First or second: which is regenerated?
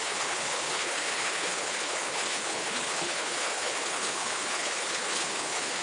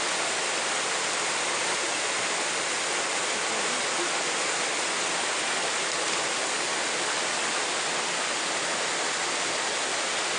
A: first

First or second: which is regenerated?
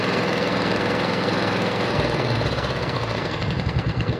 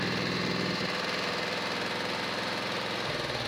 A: first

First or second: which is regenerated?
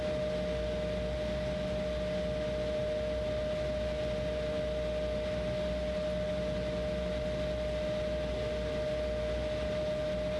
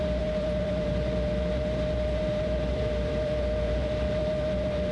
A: second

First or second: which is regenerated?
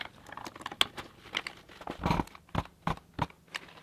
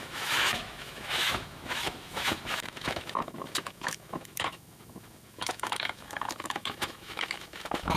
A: second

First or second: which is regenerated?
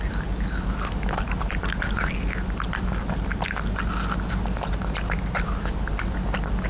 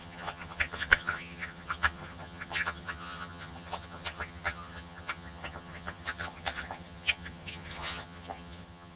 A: second